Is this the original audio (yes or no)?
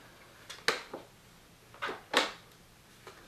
yes